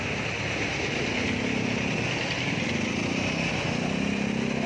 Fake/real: real